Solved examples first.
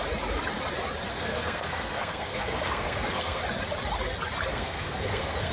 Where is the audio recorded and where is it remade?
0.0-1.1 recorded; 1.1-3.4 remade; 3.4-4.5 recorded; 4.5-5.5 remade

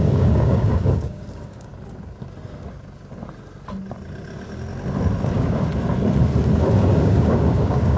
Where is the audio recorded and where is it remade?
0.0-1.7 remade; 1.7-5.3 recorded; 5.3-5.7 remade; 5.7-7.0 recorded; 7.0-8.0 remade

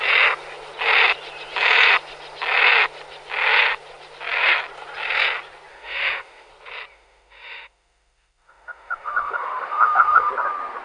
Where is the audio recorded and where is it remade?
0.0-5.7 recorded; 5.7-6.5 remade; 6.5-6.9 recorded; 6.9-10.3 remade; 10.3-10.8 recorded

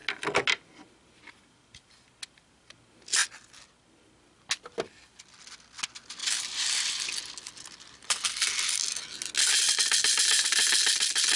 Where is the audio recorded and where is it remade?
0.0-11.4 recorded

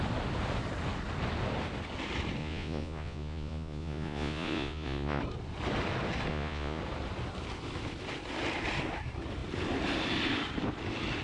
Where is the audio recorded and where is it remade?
0.0-2.4 recorded; 2.4-5.2 remade; 5.2-6.3 recorded; 6.3-6.8 remade; 6.8-11.2 recorded

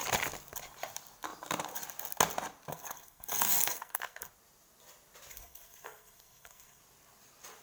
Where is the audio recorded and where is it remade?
0.0-2.7 recorded; 2.7-4.3 remade; 4.3-5.3 recorded; 5.3-6.8 remade; 6.8-7.6 recorded

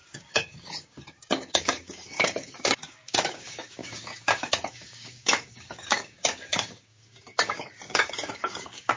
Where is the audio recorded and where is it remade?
0.0-9.0 remade

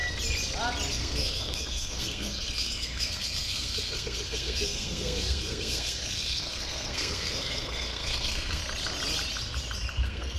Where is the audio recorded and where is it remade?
0.0-0.9 recorded; 0.9-8.6 remade; 8.6-9.9 recorded; 9.9-10.4 remade